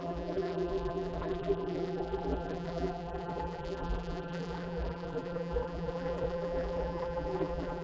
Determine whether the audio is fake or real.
fake